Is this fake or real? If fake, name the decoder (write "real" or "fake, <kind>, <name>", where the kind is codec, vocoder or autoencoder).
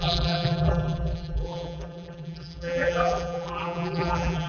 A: fake, vocoder, BigVGAN v2